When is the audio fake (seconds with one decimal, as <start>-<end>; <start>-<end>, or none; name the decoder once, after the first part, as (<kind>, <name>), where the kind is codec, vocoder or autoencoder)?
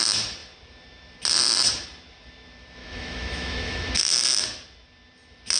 2.8-3.9 (autoencoder, DAC-VAE)